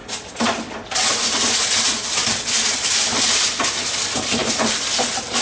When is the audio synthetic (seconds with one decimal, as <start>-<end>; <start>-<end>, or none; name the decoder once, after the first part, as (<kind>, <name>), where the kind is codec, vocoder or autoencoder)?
4.4-5.4 (vocoder, BigVGAN v2)

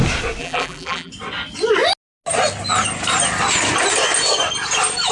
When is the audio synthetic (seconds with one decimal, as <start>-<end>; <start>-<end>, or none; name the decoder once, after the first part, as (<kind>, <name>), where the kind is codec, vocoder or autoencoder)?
0.4-1.1 (vocoder, BigVGAN v2)

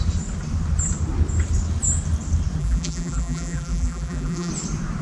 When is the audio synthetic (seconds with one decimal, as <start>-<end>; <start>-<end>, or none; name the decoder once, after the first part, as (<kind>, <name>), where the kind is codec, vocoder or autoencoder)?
2.6-4.5 (vocoder, BigVGAN v2)

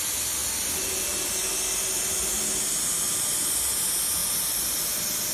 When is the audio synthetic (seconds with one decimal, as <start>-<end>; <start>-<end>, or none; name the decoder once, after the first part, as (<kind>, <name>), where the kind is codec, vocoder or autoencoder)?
none

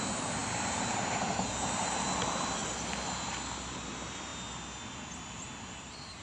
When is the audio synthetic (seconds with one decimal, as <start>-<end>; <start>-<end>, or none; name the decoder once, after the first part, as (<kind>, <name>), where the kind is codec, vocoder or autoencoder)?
0.4-2.2 (vocoder, BigVGAN v2); 2.6-3.9

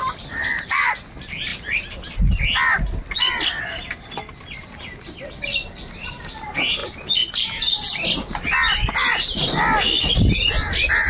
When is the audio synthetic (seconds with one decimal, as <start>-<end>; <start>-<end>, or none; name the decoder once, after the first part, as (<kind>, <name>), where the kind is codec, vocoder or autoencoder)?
0.0-0.8 (vocoder, BigVGAN v2)

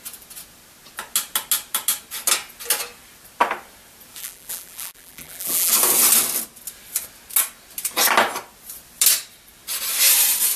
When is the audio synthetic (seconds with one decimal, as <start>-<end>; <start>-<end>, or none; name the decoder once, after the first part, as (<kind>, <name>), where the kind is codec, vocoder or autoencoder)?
4.2-5.7 (vocoder, BigVGAN v2)

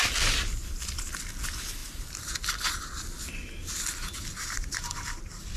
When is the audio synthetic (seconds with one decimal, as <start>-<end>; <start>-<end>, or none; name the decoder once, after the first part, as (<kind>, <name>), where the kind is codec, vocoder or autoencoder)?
none